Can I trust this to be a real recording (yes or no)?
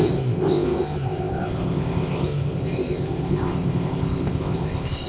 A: no